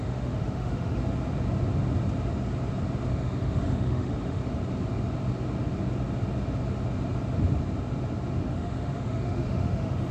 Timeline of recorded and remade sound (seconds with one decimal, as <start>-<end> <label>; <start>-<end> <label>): 0.0-1.0 remade; 1.0-3.1 recorded; 3.1-4.4 remade; 4.4-8.4 recorded; 8.4-10.1 remade